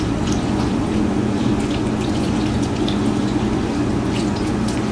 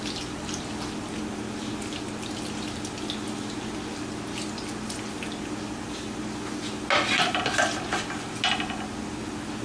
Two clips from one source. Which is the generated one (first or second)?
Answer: first